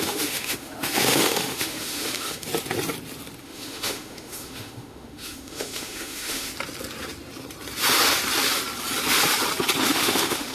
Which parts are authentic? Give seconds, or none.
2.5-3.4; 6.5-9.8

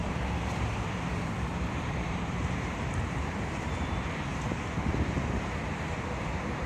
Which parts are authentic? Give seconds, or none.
4.3-5.7

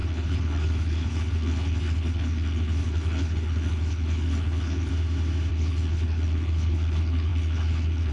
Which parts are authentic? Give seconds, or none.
4.9-5.5